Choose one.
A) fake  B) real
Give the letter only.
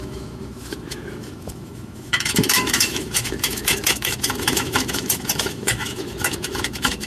A